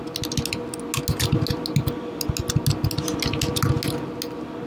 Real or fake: real